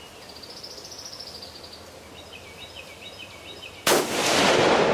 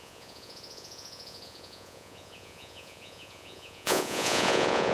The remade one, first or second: second